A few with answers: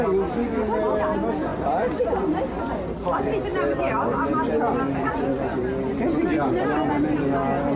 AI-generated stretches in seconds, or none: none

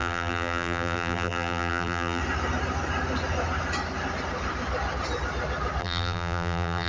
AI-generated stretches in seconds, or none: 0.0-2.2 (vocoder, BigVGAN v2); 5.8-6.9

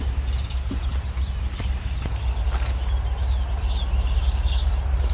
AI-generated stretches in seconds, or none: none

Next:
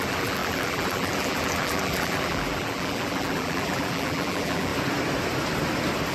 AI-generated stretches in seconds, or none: 0.0-4.7 (vocoder, BigVGAN v2)